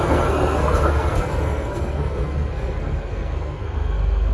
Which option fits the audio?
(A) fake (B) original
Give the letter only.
A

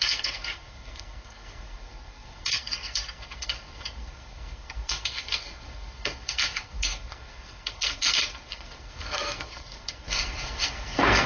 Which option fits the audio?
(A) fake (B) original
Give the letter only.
A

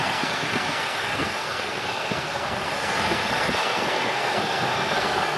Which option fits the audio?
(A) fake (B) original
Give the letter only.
A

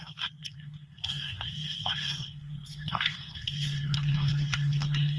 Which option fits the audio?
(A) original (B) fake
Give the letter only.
B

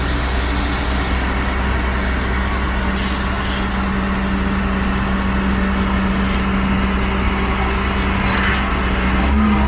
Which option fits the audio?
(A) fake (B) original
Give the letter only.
B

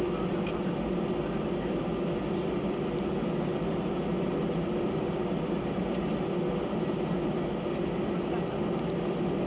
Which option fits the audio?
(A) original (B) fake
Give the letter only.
A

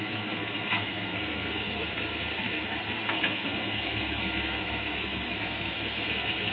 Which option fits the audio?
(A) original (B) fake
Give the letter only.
B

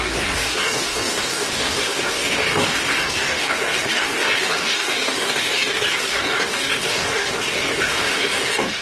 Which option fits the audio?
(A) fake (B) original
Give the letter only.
A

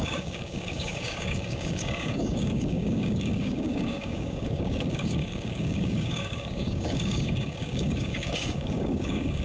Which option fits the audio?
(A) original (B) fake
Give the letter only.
B